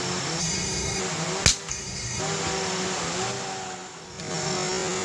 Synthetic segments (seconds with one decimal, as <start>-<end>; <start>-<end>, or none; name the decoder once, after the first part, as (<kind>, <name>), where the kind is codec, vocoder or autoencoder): 0.4-1.0 (codec, SNAC); 1.7-2.2